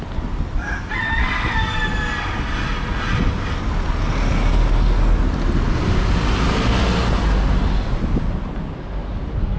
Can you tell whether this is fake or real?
real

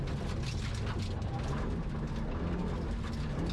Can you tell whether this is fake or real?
real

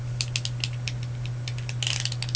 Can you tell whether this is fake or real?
real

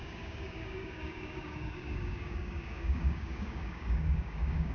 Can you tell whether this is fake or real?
fake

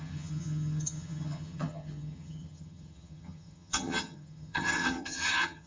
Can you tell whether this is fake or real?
fake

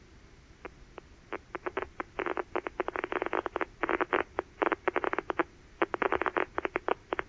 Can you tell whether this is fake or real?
real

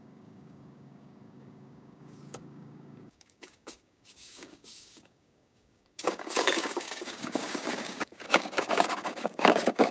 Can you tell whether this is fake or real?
fake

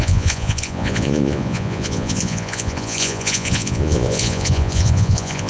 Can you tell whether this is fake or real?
fake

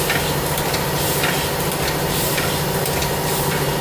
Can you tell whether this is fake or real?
real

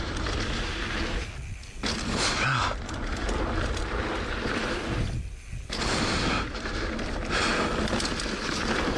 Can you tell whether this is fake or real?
real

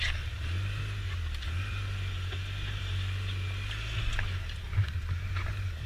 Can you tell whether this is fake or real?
real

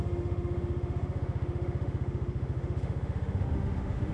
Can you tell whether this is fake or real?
fake